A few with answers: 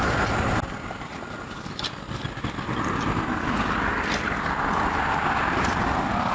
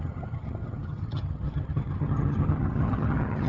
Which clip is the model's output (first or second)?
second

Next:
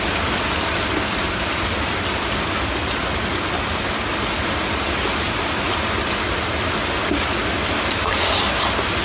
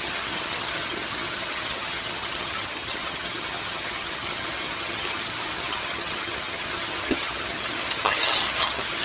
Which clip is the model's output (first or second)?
second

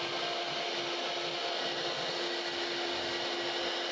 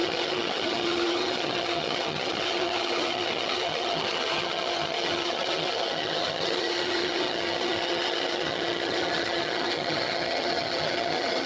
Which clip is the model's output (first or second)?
second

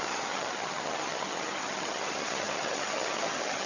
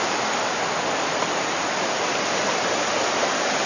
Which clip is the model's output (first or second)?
first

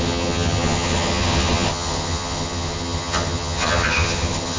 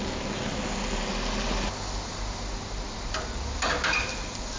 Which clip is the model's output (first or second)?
first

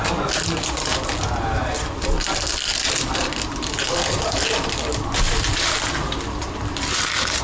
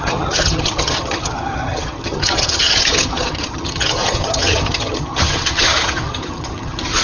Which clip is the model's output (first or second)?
second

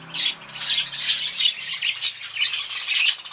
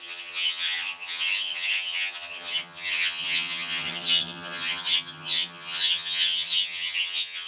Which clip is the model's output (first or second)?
second